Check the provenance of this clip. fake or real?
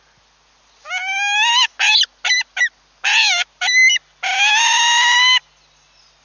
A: real